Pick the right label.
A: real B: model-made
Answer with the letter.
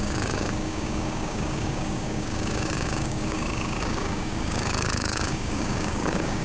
B